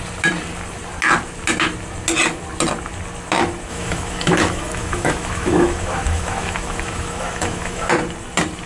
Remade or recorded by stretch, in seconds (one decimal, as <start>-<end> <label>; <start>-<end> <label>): 0.0-3.7 recorded; 3.7-7.9 remade; 7.9-8.7 recorded